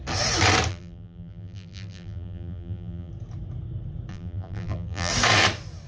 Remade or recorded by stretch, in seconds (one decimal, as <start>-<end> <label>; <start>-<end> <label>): 0.0-0.7 recorded; 0.7-3.1 remade; 3.1-4.1 recorded; 4.1-5.1 remade; 5.1-5.9 recorded